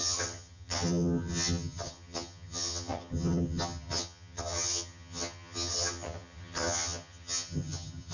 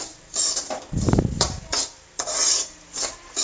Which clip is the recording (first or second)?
second